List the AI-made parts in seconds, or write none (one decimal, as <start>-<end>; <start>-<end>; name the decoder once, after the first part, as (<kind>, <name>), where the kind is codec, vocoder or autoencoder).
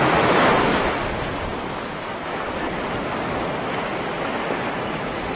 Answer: none